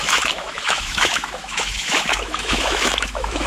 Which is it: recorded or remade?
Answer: remade